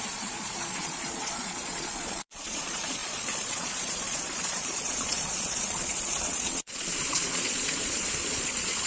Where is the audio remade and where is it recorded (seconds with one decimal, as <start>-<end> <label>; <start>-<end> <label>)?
0.0-8.9 remade